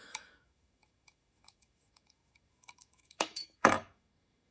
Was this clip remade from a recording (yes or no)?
yes